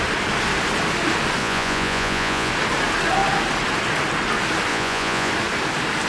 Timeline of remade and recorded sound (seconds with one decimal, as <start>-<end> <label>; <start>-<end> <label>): 0.0-1.4 recorded; 1.4-2.5 remade; 2.5-4.7 recorded; 4.7-5.3 remade; 5.3-6.1 recorded